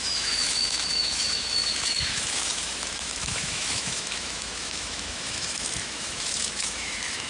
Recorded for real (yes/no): no